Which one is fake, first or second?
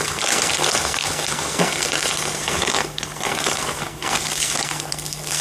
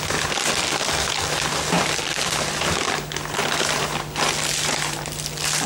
first